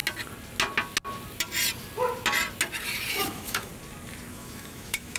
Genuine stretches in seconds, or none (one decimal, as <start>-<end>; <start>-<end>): 0.0-3.1; 3.7-4.3